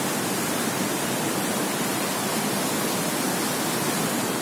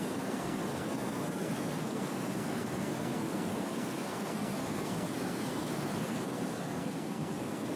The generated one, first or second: second